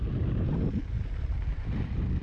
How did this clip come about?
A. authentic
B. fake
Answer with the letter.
A